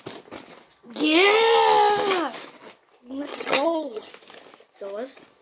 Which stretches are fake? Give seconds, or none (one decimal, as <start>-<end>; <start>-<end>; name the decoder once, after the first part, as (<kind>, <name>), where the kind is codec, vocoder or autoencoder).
3.3-4.1 (vocoder, HiFi-GAN)